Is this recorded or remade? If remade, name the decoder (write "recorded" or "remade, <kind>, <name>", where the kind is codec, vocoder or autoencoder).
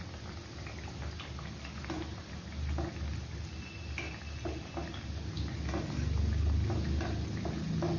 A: recorded